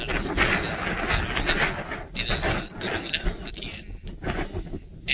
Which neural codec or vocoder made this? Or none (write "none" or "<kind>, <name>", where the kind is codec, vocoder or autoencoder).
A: none